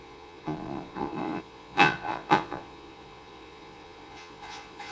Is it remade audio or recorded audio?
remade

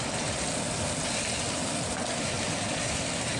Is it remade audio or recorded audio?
recorded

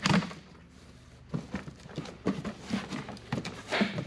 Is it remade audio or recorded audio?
recorded